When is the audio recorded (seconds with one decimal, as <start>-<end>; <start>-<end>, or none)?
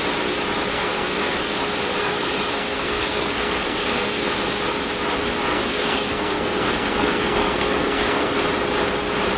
0.0-0.7; 1.6-2.0; 4.2-5.5; 8.4-9.4